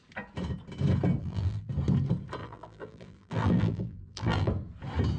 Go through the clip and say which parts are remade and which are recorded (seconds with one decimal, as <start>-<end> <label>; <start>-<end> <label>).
0.0-1.2 recorded; 1.2-1.7 remade; 1.7-2.4 recorded; 2.4-4.5 remade; 4.5-5.2 recorded